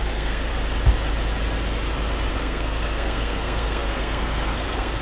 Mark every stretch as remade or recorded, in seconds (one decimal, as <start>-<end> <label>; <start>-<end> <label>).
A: 0.0-0.5 remade; 0.5-2.3 recorded; 2.3-5.0 remade